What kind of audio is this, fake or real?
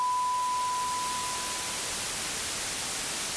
real